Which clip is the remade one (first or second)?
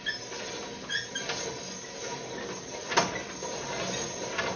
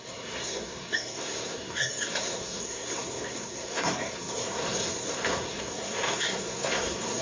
second